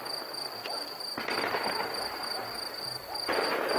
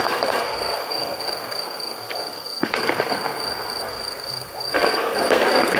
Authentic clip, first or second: first